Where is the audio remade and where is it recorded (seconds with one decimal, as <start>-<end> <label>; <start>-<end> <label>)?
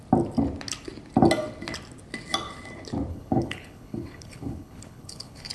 0.0-3.1 recorded; 3.1-5.5 remade